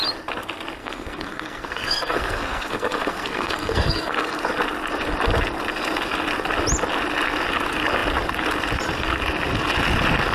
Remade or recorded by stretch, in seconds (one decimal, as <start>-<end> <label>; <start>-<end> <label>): 0.0-0.8 recorded; 0.8-4.5 remade; 4.5-10.3 recorded